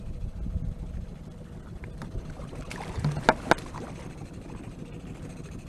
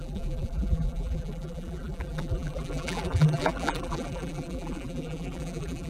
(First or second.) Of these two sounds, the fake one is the second